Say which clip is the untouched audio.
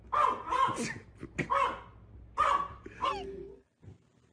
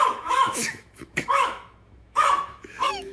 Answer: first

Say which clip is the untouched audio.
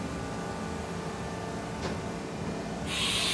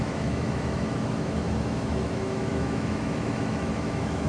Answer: first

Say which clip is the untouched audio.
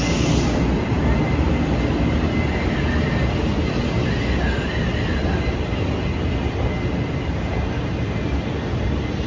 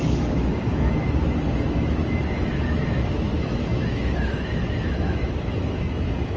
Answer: first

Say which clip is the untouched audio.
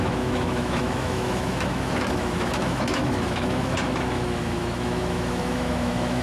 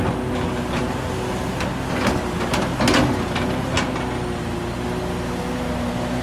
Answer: second